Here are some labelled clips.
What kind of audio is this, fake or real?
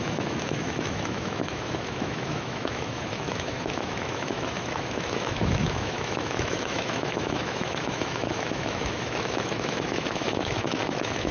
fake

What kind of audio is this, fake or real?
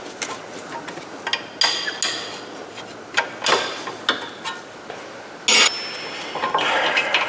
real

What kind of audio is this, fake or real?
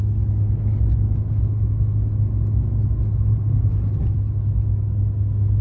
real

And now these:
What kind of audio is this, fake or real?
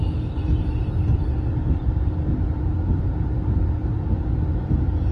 real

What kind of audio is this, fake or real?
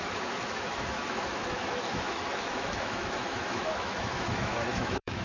fake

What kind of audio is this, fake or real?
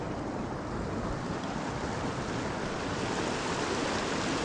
real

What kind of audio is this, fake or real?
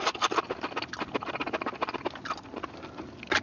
real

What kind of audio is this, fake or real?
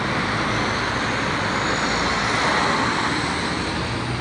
real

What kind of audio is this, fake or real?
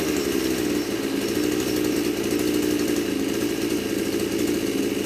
real